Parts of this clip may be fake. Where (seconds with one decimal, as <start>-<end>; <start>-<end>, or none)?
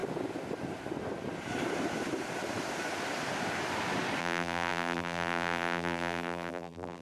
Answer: 4.2-7.0